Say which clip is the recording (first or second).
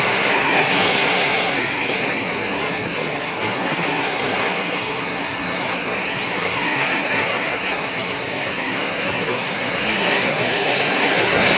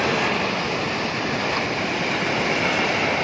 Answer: second